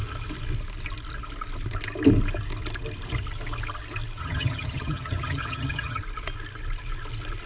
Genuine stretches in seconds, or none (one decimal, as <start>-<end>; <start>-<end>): 0.0-4.2; 6.0-7.5